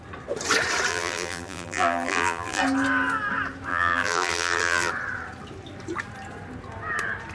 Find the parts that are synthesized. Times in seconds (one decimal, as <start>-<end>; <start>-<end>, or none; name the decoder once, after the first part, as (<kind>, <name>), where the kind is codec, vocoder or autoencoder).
0.9-2.6 (vocoder, BigVGAN v2); 3.7-4.9